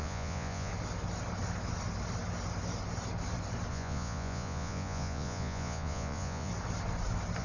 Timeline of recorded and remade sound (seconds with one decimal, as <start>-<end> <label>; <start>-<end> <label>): 0.0-0.7 remade; 0.7-3.7 recorded; 3.7-6.5 remade; 6.5-7.4 recorded